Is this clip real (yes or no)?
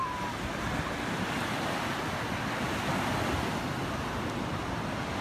yes